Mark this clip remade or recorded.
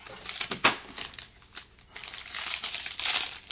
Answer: recorded